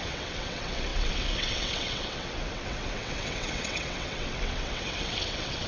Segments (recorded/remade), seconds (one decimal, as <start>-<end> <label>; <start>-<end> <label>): 0.0-5.7 remade